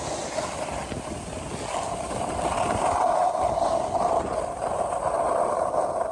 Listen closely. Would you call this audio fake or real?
real